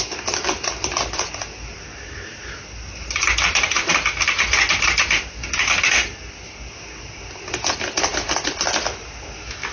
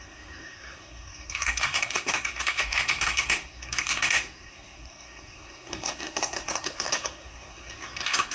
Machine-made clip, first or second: second